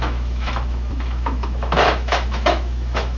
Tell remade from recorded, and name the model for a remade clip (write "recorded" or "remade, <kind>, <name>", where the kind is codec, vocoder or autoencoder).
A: remade, autoencoder, DAC-VAE